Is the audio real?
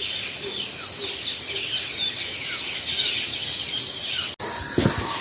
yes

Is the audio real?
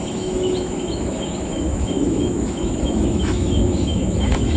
no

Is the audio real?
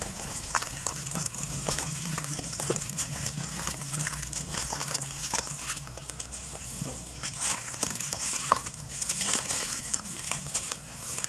no